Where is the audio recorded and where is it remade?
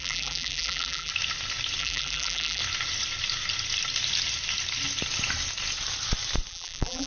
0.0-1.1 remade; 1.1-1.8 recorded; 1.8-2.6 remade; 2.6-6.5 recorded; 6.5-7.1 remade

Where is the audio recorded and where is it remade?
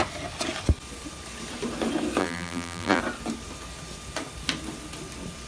0.0-2.2 recorded; 2.2-3.0 remade; 3.0-5.5 recorded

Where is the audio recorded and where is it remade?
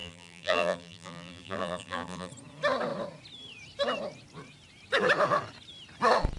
0.0-2.3 remade; 2.3-6.4 recorded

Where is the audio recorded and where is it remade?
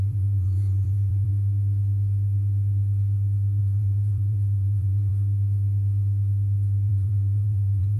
0.0-1.3 remade; 1.3-3.6 recorded; 3.6-5.1 remade; 5.1-6.9 recorded; 6.9-8.0 remade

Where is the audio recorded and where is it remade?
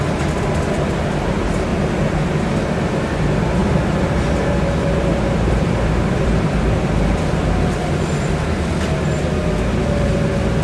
0.0-3.6 recorded; 3.6-8.7 remade; 8.7-10.6 recorded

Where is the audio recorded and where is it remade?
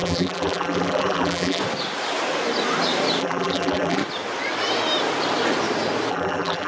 0.0-1.6 remade; 1.6-3.2 recorded; 3.2-4.0 remade; 4.0-6.1 recorded; 6.1-6.7 remade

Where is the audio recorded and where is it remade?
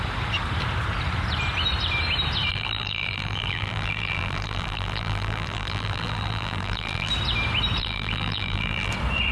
0.0-2.5 recorded; 2.5-7.1 remade; 7.1-7.8 recorded; 7.8-8.9 remade; 8.9-9.3 recorded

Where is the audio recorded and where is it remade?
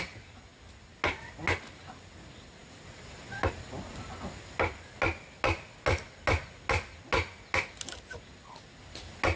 0.0-9.4 recorded